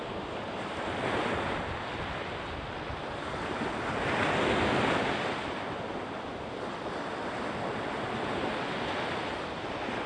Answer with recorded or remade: recorded